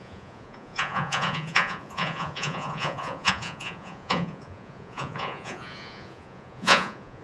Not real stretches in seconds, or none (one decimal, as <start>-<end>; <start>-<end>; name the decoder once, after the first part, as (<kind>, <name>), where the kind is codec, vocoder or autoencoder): 0.0-7.2 (vocoder, Vocos)